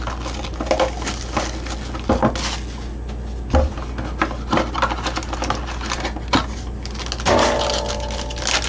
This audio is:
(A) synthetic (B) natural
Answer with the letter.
B